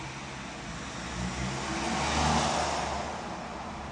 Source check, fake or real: real